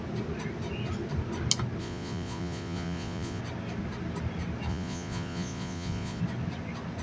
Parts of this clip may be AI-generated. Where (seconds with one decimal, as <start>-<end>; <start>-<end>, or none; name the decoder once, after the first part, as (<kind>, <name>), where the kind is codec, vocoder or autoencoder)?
1.8-3.4 (vocoder, Vocos); 4.7-6.2